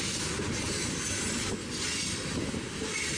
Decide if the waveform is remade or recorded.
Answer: recorded